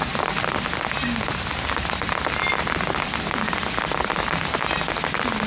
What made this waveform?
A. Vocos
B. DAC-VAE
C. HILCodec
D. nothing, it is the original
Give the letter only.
D